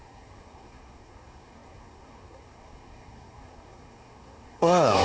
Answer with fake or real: fake